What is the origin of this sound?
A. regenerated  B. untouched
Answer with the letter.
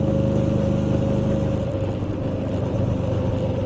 B